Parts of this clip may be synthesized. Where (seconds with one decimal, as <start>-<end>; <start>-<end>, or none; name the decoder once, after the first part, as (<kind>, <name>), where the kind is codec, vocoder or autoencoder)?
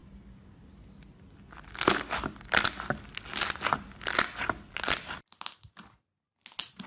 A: none